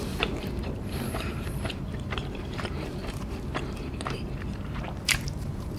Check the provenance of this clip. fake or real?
fake